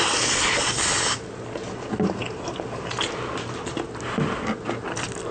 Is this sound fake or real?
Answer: real